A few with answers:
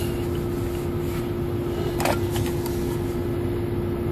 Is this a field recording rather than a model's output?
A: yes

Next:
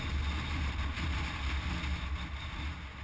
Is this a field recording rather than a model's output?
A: yes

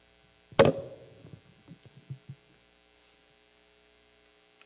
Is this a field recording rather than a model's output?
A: yes